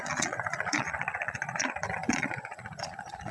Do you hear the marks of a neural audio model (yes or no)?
yes